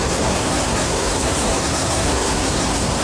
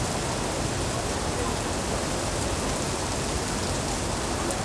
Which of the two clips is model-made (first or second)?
first